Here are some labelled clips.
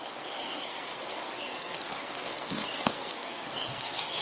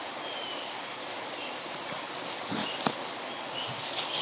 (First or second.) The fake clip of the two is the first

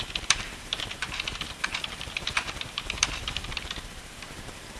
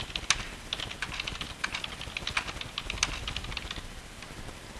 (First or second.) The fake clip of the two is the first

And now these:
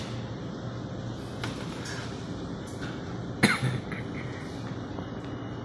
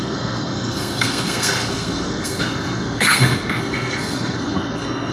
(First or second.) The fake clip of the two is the second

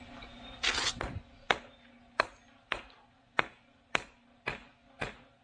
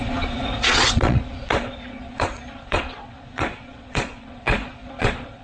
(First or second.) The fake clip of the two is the second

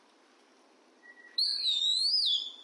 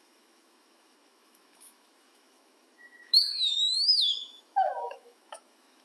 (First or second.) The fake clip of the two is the second